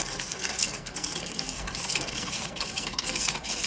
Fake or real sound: fake